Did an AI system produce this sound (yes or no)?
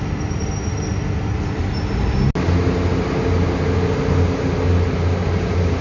no